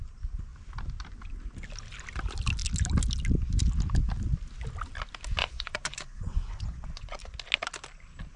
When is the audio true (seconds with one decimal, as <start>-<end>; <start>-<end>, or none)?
0.0-5.4; 7.2-8.4